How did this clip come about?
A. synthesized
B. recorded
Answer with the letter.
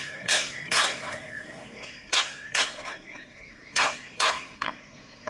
A